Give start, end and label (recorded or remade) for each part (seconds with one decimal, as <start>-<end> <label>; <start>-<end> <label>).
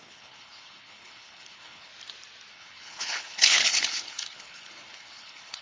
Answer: 0.0-1.9 remade; 1.9-2.5 recorded; 2.5-5.6 remade